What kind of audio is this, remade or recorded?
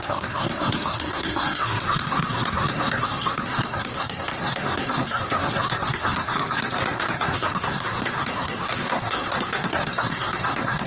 remade